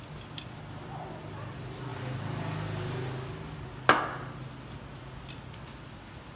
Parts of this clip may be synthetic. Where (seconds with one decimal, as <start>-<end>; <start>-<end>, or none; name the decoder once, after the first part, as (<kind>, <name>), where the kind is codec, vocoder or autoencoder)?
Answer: none